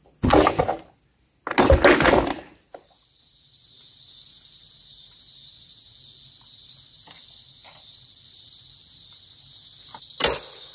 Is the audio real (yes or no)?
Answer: yes